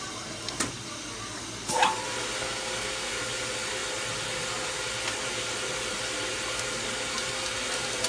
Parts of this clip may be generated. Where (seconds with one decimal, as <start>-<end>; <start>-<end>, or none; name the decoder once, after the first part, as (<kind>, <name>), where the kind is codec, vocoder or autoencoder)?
2.4-3.1 (codec, SNAC)